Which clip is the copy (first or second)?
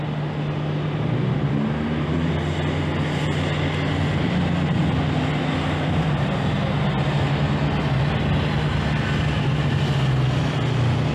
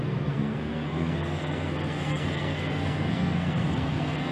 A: second